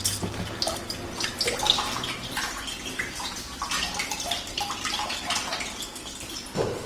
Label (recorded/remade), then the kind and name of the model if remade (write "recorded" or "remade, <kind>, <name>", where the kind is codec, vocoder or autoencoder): recorded